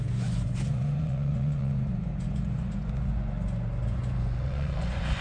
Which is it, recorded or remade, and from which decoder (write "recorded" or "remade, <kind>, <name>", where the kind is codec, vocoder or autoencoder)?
remade, vocoder, Vocos